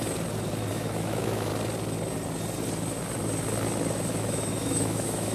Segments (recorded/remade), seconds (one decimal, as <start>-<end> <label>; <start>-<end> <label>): 0.0-0.7 recorded; 0.7-1.5 remade; 1.5-4.1 recorded; 4.1-5.3 remade